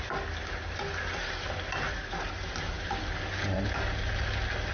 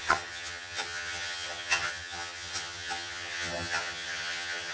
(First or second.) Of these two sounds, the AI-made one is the second